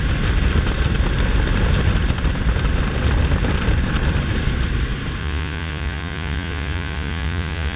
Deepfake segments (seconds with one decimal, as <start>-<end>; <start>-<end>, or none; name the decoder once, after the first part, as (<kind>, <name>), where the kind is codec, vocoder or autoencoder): 5.2-7.8 (vocoder, Vocos)